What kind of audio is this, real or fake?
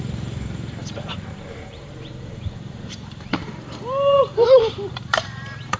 fake